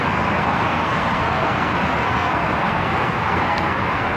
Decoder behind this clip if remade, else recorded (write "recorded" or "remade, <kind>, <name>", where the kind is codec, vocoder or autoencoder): remade, codec, SNAC